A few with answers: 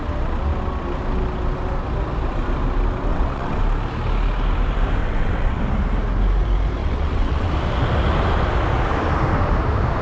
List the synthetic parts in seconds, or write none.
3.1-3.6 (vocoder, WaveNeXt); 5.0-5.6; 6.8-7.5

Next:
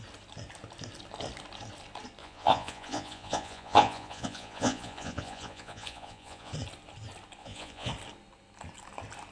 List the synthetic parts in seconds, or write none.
2.2-6.5 (vocoder, Vocos); 7.4-7.9

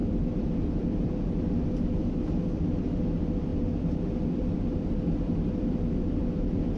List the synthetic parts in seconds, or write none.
0.0-6.8 (vocoder, BigVGAN v2)

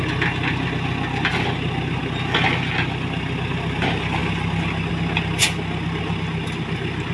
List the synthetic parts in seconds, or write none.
none

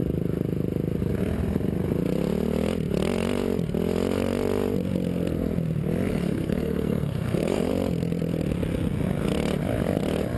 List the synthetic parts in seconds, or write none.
6.1-7.7 (codec, SNAC)

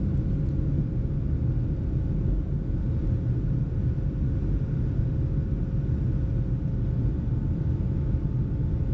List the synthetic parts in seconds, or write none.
none

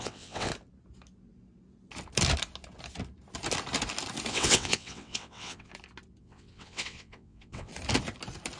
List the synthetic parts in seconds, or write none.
0.0-0.5 (vocoder, WaveNeXt); 4.3-5.7; 6.2-7.7

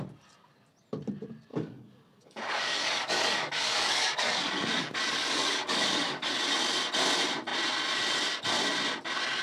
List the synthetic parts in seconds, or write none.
1.5-6.4 (codec, DAC)